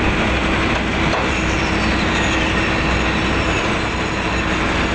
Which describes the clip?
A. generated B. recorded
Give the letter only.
B